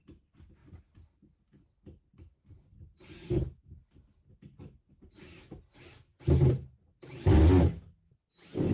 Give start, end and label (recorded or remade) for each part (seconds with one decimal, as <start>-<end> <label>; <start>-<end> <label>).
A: 0.0-8.7 recorded